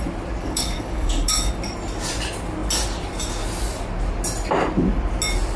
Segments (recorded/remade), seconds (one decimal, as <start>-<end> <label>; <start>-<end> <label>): 0.0-0.4 recorded; 0.4-1.5 remade; 1.5-5.6 recorded